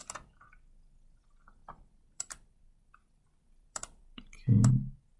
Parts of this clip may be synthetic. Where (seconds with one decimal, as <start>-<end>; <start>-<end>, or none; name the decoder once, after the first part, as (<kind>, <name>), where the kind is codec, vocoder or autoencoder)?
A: 1.6-4.7 (vocoder, BigVGAN v2)